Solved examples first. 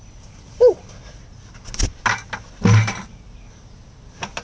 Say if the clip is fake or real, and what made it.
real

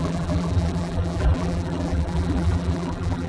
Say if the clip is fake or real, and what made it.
fake, vocoder, BigVGAN v2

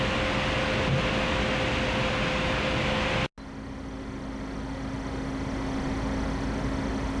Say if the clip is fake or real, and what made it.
real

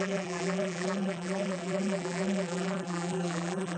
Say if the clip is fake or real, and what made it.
fake, vocoder, BigVGAN v2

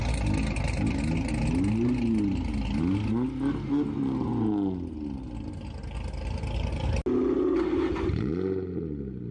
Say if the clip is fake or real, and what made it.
real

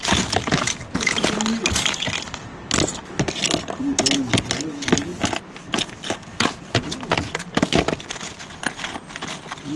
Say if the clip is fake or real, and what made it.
real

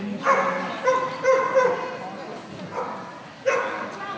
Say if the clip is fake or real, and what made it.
real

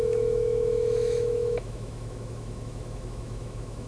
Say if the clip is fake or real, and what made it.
fake, autoencoder, DAC-VAE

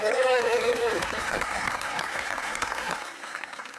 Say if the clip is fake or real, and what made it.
fake, codec, SNAC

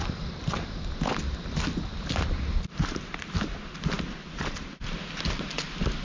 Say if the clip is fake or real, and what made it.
real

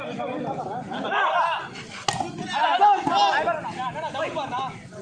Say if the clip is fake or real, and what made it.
real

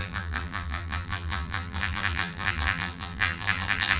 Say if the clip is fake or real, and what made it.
fake, vocoder, BigVGAN v2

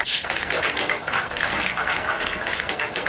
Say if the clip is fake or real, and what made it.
fake, codec, SNAC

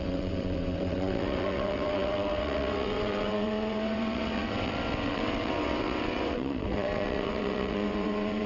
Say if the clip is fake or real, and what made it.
fake, vocoder, WaveNeXt